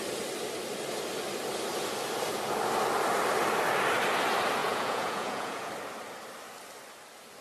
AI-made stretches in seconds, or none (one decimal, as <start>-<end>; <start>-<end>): 4.6-5.7